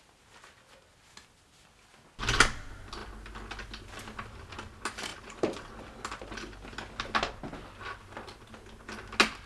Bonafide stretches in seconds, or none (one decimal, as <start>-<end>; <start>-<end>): 0.0-5.1; 5.7-9.5